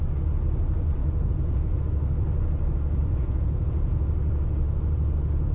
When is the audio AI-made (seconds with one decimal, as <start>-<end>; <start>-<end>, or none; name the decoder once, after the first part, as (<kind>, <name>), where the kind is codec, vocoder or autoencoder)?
1.0-1.8 (vocoder, Vocos); 3.0-4.0